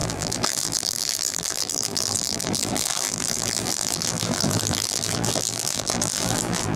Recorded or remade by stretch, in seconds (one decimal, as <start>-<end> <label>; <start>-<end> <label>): 0.0-6.8 remade